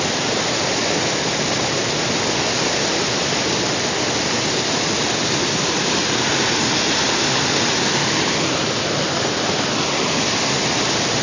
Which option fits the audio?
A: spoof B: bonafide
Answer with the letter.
B